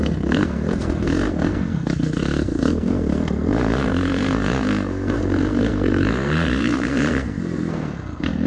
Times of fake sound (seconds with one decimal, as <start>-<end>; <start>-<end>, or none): 0.0-8.5